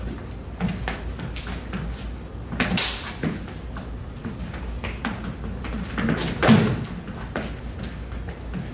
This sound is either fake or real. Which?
real